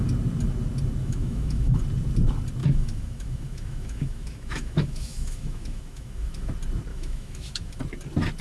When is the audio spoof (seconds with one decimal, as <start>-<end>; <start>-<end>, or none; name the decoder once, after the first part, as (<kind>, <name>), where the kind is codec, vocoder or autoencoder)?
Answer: 1.0-1.8 (autoencoder, DAC-VAE); 2.6-6.5; 6.9-7.8